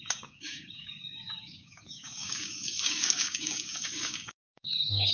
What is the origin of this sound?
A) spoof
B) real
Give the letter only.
A